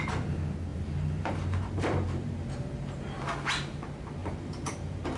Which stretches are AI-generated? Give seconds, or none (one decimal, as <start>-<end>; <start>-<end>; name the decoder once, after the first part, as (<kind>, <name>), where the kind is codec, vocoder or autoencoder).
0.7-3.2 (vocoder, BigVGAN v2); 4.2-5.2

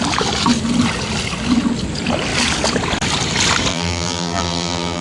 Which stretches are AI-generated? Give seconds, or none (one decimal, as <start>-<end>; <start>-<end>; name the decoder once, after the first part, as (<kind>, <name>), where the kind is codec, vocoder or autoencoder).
3.7-5.0 (vocoder, BigVGAN v2)

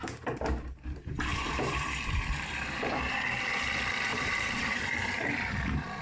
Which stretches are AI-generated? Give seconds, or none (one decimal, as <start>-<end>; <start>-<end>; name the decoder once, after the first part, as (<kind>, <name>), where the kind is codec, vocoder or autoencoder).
1.3-2.1 (vocoder, BigVGAN v2); 4.1-4.8

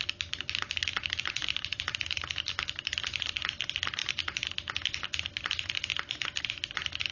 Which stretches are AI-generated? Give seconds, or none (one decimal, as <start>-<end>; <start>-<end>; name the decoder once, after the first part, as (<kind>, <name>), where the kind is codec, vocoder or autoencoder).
0.9-3.0 (vocoder, BigVGAN v2); 4.0-4.5

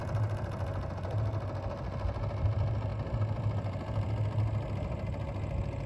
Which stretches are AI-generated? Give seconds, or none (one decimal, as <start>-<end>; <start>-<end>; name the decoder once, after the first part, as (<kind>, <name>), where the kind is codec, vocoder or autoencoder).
none

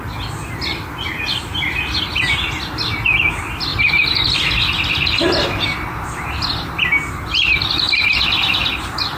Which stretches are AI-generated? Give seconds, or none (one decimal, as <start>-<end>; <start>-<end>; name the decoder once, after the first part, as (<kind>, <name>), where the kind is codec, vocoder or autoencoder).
1.5-2.1 (vocoder, BigVGAN v2)